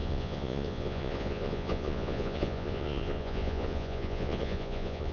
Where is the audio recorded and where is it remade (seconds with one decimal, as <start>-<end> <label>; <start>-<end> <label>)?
0.0-5.1 remade